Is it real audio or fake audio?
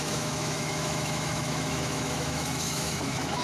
fake